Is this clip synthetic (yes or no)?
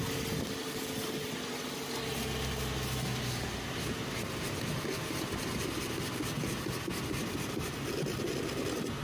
no